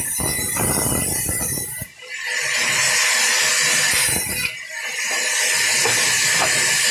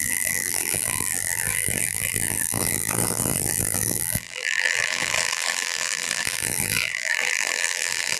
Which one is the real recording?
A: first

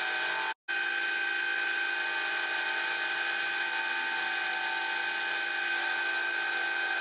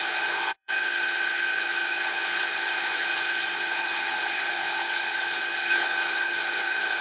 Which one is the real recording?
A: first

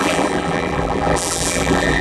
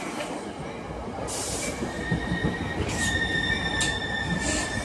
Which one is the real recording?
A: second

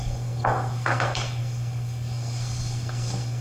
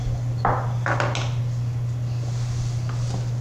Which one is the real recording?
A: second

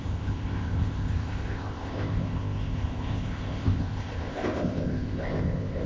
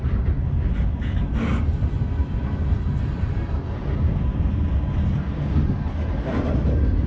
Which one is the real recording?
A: second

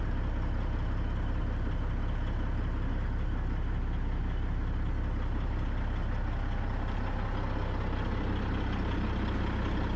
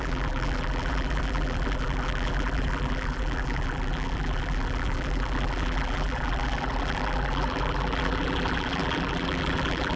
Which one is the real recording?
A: first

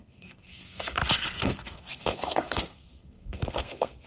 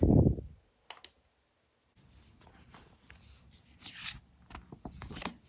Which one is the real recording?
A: second